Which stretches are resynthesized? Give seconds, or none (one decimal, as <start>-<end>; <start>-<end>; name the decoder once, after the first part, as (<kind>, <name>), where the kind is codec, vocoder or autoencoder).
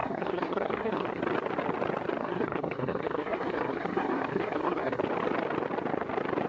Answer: 0.0-1.2 (codec, SNAC); 2.2-5.0